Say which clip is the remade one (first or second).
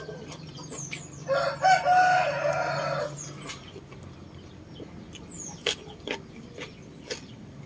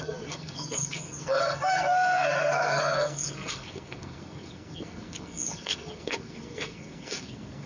second